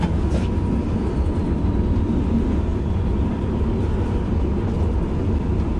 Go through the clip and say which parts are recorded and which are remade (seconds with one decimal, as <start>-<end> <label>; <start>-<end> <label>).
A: 0.0-1.0 recorded; 1.0-2.2 remade; 2.2-2.7 recorded; 2.7-4.3 remade; 4.3-5.8 recorded